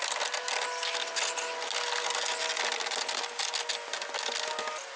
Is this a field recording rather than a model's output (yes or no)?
yes